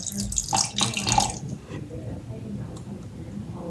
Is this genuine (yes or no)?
yes